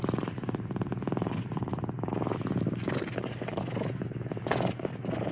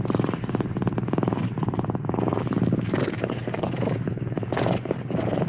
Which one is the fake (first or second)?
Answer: second